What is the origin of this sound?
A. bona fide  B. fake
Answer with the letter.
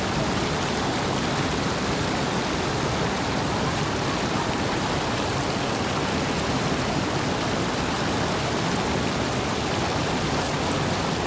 A